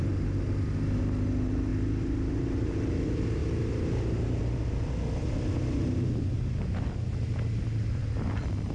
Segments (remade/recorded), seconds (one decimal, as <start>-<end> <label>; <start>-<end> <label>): 0.0-1.7 recorded; 1.7-2.9 remade; 2.9-8.7 recorded